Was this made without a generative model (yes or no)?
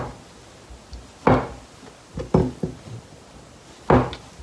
yes